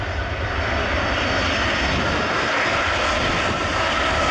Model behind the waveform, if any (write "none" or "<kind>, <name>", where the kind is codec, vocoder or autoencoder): none